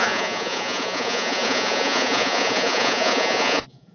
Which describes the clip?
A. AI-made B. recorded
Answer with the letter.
A